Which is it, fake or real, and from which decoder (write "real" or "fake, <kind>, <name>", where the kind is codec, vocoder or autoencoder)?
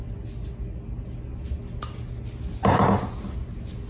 real